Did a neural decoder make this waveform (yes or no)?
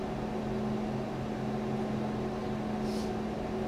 no